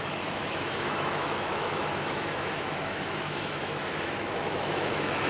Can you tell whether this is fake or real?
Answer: fake